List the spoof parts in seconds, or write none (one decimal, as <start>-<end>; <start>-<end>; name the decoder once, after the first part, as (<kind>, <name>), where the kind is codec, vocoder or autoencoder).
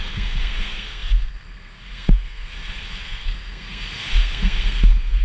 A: 0.0-5.2 (codec, SNAC)